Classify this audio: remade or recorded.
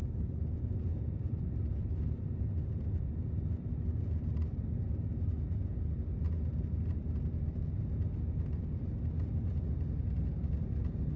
recorded